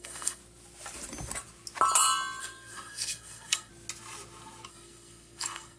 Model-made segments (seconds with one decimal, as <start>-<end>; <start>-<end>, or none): 0.0-0.4; 2.4-3.7; 4.7-5.8